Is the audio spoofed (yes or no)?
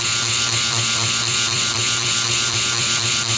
yes